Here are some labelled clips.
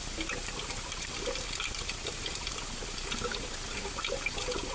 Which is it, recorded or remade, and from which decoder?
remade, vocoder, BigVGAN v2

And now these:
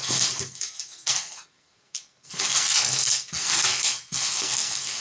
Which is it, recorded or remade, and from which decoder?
remade, codec, SNAC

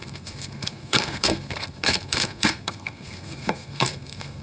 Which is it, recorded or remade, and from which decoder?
remade, codec, SNAC